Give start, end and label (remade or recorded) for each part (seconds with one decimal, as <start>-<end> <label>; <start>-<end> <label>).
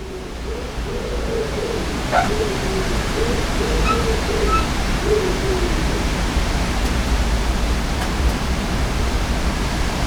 0.0-6.8 remade; 6.8-8.0 recorded; 8.0-10.1 remade